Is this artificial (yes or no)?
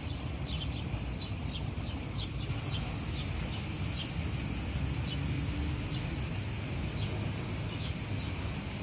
no